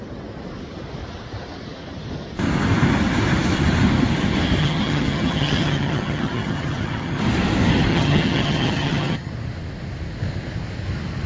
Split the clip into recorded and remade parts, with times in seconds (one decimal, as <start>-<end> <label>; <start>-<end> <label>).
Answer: 0.0-4.6 recorded; 4.6-7.2 remade; 7.2-7.9 recorded; 7.9-9.3 remade; 9.3-11.3 recorded